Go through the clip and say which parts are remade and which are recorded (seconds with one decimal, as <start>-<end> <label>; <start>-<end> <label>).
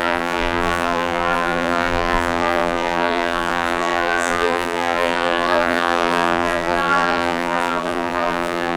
0.0-8.8 remade